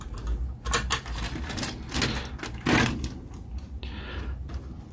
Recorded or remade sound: recorded